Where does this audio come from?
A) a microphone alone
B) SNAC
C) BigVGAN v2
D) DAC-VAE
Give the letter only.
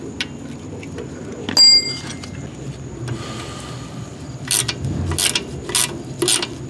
A